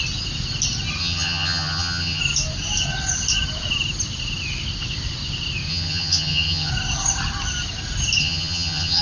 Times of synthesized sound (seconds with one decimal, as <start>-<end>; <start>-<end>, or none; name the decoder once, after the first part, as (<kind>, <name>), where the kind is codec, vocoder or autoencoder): 1.0-2.2 (vocoder, HiFi-GAN); 5.7-6.7; 8.2-9.0